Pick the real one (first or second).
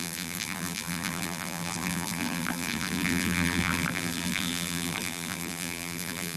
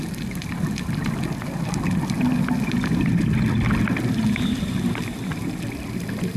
second